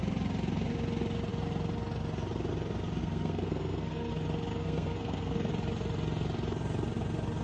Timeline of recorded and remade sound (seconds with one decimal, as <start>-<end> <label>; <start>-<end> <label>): 0.0-3.0 recorded; 3.0-4.1 remade; 4.1-4.5 recorded; 4.5-5.5 remade; 5.5-7.4 recorded